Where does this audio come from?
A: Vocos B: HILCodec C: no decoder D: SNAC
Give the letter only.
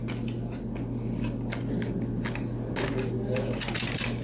C